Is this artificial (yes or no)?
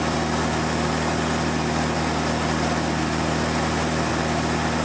no